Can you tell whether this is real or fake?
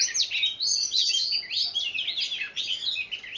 real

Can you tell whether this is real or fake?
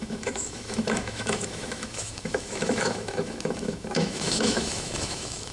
fake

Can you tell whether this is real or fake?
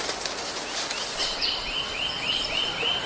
real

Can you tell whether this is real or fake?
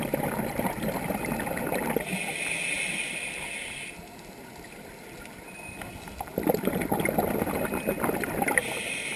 real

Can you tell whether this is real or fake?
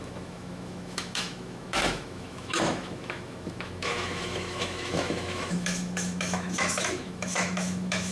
fake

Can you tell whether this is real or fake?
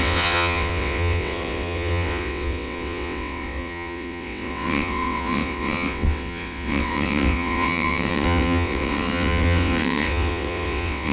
fake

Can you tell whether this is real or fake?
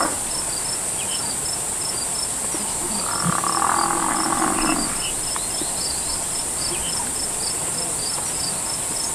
real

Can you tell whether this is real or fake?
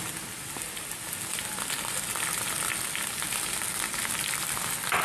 real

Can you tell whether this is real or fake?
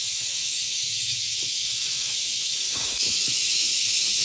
fake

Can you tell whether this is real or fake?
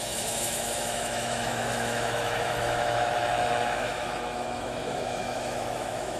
fake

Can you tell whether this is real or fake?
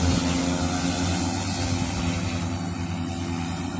real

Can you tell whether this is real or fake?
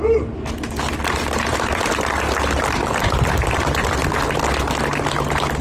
real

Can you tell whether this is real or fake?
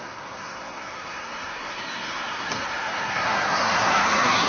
fake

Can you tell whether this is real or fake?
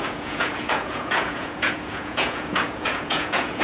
fake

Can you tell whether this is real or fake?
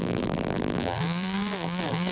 fake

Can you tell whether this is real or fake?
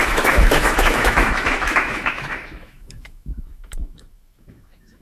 fake